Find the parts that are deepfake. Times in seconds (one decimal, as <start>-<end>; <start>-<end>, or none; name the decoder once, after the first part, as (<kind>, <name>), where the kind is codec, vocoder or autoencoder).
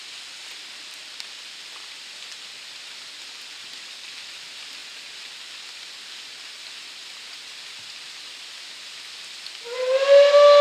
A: none